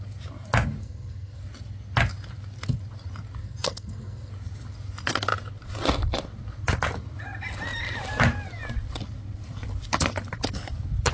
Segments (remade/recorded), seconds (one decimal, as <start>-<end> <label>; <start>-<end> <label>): 0.0-0.8 recorded; 0.8-1.4 remade; 1.4-3.4 recorded; 3.4-4.3 remade; 4.3-11.1 recorded